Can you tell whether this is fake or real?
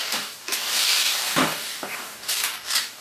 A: fake